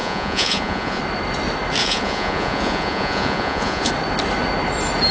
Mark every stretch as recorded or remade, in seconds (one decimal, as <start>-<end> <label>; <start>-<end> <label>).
0.0-1.0 remade; 1.0-1.8 recorded; 1.8-3.9 remade; 3.9-5.1 recorded